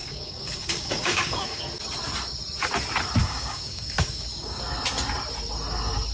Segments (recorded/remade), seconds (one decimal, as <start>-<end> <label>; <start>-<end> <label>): 0.0-1.6 remade; 1.6-3.2 recorded; 3.2-4.6 remade; 4.6-6.1 recorded